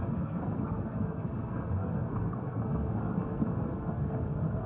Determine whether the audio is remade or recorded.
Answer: remade